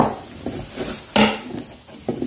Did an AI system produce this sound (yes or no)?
no